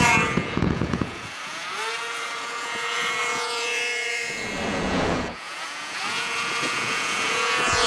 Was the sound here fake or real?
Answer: fake